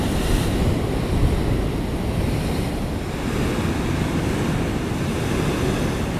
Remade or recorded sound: recorded